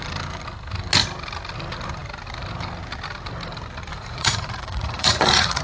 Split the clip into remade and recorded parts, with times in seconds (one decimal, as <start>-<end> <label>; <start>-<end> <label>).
0.0-3.9 recorded; 3.9-5.6 remade